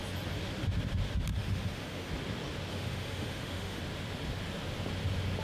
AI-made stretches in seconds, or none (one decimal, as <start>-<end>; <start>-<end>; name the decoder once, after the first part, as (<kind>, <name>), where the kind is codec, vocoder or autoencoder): 1.3-2.1 (autoencoder, DAC-VAE); 2.7-3.8